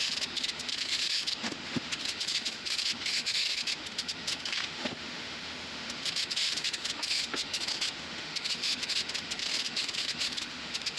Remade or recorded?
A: remade